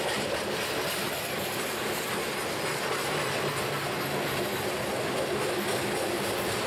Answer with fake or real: real